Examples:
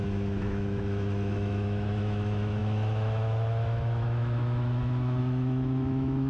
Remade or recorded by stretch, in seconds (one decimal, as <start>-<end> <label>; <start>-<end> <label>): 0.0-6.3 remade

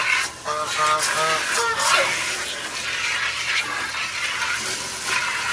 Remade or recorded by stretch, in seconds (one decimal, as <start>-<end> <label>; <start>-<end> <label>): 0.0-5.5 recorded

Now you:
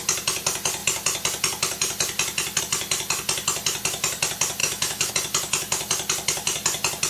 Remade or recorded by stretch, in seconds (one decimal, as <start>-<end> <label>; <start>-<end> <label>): 0.0-4.6 recorded; 4.6-5.1 remade; 5.1-7.1 recorded

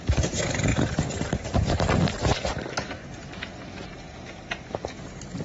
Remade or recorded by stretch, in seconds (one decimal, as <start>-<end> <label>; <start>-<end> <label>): 0.0-5.4 recorded

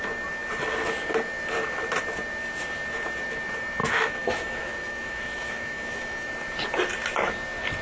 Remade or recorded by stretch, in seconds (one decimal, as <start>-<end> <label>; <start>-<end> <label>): 0.0-3.8 recorded; 3.8-6.3 remade; 6.3-7.8 recorded

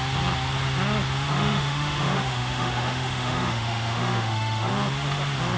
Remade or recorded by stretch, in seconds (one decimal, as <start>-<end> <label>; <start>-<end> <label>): 0.0-1.3 recorded; 1.3-4.7 remade; 4.7-5.6 recorded